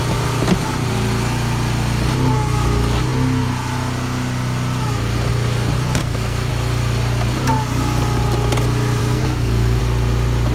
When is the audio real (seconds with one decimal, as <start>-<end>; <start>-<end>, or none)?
0.0-6.0; 6.5-9.0; 9.8-10.5